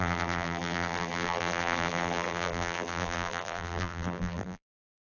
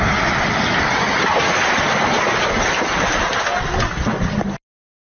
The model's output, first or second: first